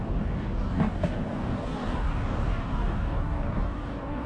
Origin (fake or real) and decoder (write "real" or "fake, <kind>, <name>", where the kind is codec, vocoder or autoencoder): fake, codec, DAC